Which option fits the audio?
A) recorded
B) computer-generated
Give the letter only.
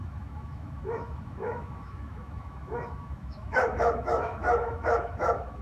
B